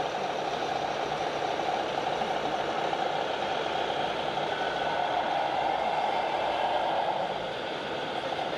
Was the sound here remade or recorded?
remade